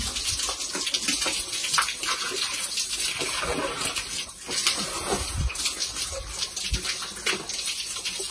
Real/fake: real